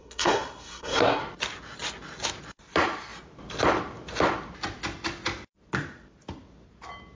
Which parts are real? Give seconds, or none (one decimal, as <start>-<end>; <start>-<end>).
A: 1.2-7.1